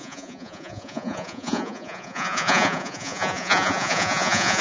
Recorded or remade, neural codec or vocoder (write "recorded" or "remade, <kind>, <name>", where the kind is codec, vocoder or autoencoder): remade, vocoder, Vocos